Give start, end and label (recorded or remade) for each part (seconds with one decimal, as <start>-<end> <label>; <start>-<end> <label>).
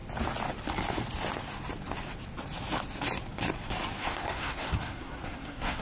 0.0-4.0 recorded; 4.0-5.8 remade